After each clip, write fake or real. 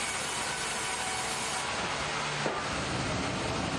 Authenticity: real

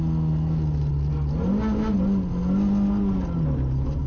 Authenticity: real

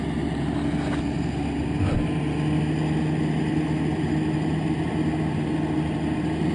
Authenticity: real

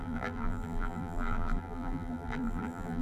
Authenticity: fake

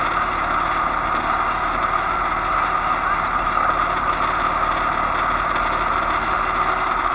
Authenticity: real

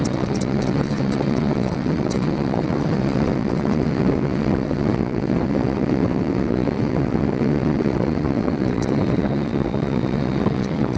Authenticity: fake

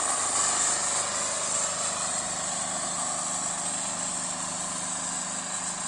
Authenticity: real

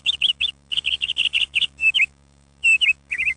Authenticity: fake